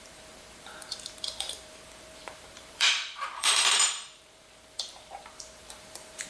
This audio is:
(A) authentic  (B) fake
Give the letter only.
B